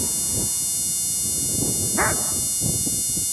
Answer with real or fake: real